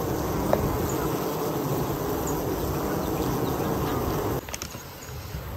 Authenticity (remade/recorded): recorded